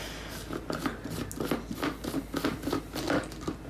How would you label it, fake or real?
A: real